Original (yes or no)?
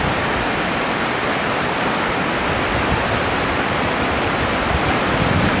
yes